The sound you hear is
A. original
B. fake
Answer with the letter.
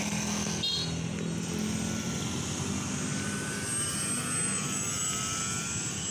A